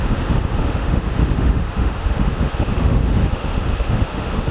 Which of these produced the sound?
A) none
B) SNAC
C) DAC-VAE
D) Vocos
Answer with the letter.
C